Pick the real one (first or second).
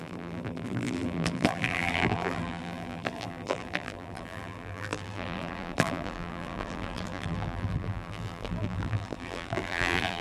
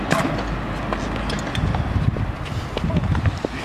second